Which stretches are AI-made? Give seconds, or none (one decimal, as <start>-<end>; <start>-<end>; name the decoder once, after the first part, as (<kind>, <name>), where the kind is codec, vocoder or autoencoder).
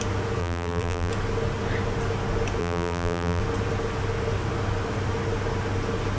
0.4-1.1 (vocoder, BigVGAN v2); 2.6-3.4